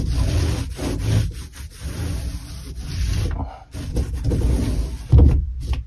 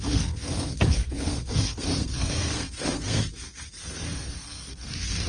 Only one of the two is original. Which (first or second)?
first